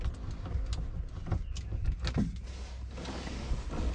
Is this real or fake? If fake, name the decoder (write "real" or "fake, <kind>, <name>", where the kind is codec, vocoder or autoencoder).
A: real